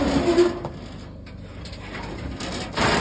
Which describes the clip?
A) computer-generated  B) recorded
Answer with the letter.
B